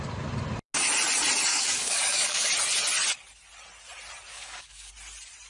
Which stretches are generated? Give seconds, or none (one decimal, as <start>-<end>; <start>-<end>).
1.5-2.5; 4.3-4.9